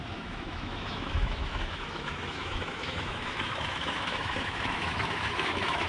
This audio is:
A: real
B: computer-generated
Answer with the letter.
B